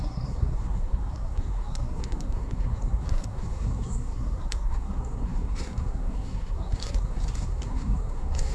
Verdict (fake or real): fake